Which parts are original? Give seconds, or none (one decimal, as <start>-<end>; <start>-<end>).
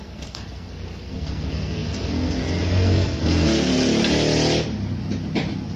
3.7-5.8